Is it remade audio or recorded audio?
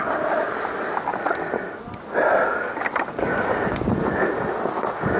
recorded